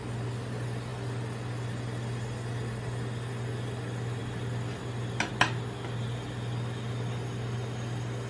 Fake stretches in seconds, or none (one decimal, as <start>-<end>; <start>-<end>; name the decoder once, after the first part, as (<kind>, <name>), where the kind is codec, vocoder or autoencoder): none